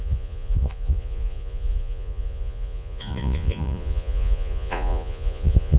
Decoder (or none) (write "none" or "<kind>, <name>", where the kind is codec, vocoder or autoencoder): vocoder, Vocos